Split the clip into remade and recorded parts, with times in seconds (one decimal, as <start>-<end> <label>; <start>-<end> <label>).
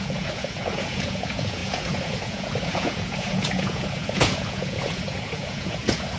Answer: 0.0-6.2 remade